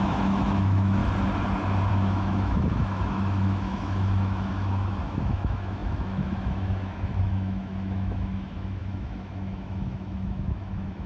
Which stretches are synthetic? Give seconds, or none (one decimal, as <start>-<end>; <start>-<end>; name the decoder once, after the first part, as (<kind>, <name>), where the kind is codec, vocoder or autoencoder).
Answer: 0.0-1.0 (autoencoder, DAC-VAE); 1.9-11.1